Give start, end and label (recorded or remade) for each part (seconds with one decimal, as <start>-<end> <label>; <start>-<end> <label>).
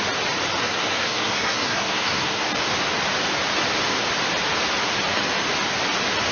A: 0.0-0.6 recorded; 0.6-2.5 remade; 2.5-6.3 recorded